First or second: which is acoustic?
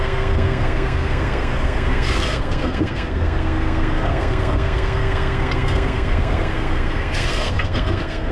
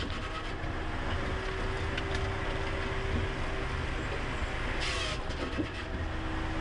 second